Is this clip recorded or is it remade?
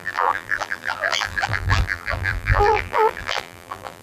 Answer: remade